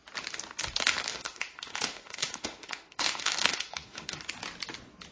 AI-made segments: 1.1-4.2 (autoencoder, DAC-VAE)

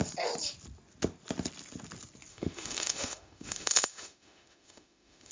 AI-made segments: 2.3-5.3 (autoencoder, DAC-VAE)

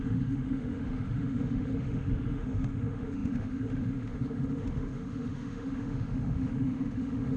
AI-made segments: 0.0-7.4 (autoencoder, DAC-VAE)